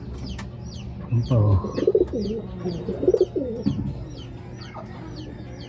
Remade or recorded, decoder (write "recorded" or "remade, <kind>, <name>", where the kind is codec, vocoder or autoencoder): recorded